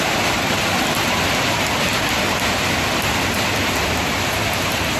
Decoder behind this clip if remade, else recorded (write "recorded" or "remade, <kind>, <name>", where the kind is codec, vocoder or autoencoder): recorded